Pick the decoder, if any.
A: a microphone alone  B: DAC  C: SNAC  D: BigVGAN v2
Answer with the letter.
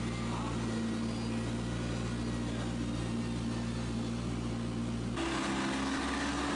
A